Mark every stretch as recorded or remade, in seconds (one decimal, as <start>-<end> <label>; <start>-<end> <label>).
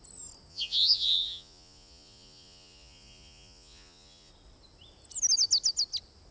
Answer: 0.0-0.5 recorded; 0.5-4.3 remade; 4.3-6.3 recorded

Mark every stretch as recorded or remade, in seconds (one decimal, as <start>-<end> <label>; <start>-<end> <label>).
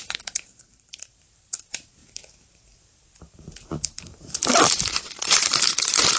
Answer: 0.0-6.2 remade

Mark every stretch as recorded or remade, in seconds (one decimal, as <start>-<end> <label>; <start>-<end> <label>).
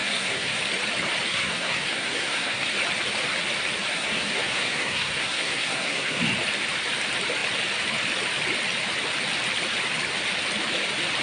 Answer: 0.0-0.6 remade; 0.6-1.3 recorded; 1.3-2.7 remade; 2.7-3.9 recorded; 3.9-6.2 remade; 6.2-11.2 recorded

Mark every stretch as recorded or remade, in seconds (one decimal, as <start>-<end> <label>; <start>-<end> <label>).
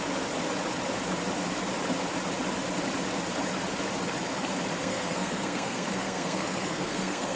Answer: 0.0-4.8 recorded; 4.8-7.4 remade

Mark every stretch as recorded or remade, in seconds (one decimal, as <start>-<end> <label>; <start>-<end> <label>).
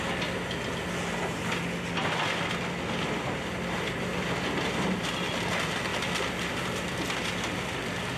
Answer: 0.0-8.2 recorded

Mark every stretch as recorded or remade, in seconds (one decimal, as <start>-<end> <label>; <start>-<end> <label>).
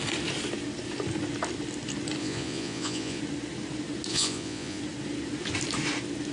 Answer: 0.0-2.2 recorded; 2.2-3.2 remade; 3.2-4.1 recorded; 4.1-4.8 remade; 4.8-6.3 recorded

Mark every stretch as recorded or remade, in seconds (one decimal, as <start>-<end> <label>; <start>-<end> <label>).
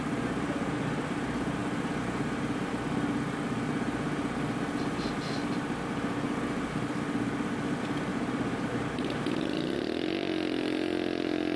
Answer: 0.0-8.1 recorded; 8.1-8.7 remade; 8.7-11.6 recorded